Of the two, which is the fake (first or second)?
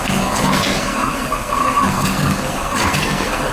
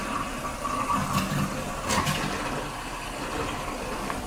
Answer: first